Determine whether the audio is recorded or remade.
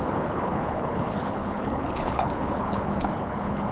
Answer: remade